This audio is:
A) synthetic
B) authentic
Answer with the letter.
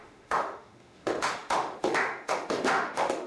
A